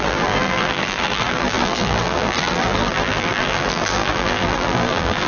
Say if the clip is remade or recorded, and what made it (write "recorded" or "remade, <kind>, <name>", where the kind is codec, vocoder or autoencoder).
remade, vocoder, BigVGAN v2